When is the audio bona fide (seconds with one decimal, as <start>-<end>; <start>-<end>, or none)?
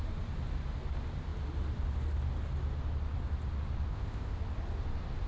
0.0-3.9; 4.4-5.3